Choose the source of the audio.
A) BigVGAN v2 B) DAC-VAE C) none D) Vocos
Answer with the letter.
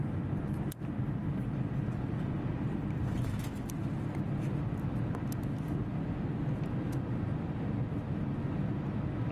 C